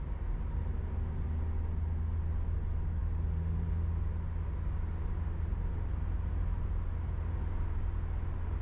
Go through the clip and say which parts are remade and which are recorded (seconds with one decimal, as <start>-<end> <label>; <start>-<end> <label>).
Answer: 0.0-8.6 recorded